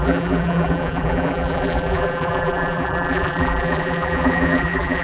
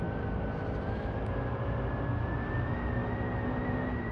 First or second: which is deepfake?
first